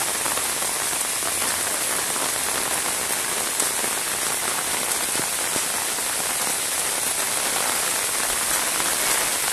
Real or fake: real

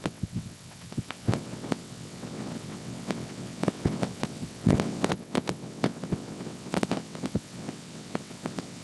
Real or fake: fake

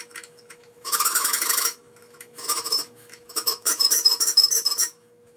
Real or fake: fake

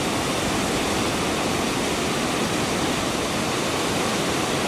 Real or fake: real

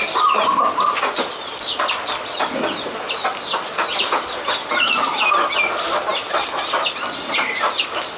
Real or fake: real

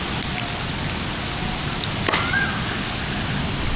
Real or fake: real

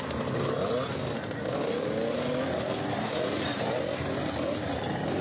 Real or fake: real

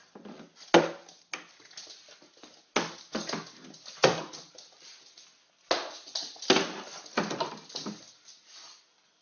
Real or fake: real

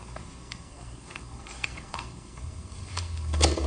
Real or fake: fake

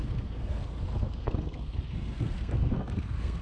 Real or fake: fake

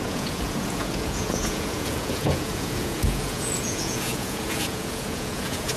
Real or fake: fake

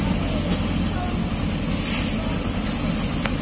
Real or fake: real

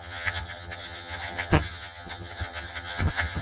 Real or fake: fake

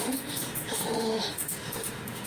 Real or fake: fake